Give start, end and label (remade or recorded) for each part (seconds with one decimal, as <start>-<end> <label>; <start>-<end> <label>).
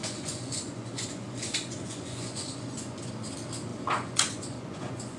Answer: 0.0-3.1 remade; 3.1-3.7 recorded; 3.7-5.2 remade